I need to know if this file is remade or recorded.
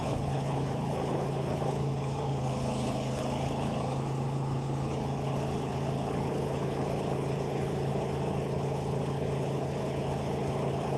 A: remade